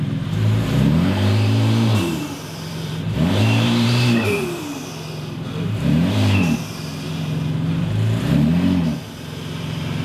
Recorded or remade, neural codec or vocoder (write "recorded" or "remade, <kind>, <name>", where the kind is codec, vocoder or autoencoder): remade, vocoder, BigVGAN v2